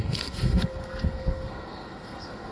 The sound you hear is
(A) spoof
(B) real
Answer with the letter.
A